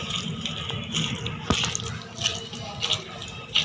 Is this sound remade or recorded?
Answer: recorded